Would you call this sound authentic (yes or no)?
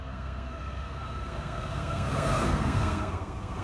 no